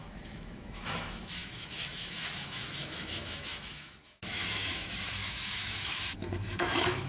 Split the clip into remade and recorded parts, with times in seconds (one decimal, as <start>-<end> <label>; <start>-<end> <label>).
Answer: 0.0-7.1 remade